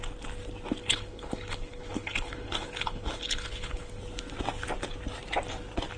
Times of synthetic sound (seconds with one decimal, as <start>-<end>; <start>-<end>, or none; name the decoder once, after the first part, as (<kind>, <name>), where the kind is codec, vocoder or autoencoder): 0.8-4.0 (codec, HILCodec)

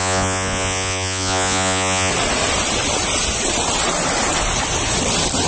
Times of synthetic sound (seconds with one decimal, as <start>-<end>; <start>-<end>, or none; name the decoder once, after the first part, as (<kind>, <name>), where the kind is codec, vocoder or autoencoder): 0.0-2.1 (vocoder, Vocos)